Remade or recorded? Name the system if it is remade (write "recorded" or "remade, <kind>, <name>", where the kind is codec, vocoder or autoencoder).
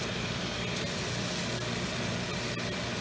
recorded